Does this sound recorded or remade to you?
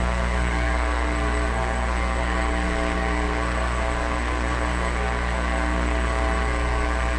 remade